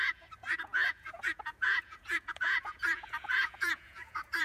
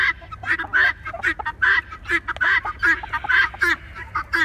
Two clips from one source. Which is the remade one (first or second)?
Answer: first